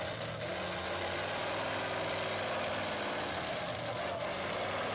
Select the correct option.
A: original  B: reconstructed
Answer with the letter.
A